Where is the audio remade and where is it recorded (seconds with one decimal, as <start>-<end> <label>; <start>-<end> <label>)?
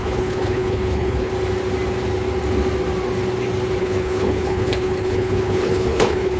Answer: 0.0-1.3 remade; 1.3-3.8 recorded; 3.8-6.4 remade